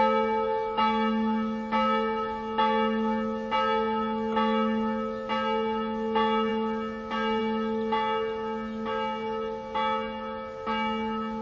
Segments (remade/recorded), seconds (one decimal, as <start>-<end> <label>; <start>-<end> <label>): 0.0-11.4 recorded